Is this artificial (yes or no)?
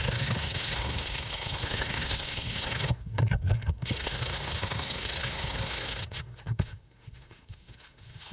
yes